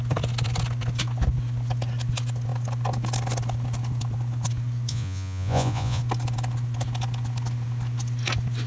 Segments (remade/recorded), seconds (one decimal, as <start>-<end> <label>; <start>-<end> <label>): 0.0-4.9 recorded; 4.9-6.0 remade; 6.0-8.7 recorded